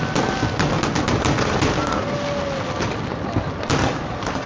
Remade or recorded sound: recorded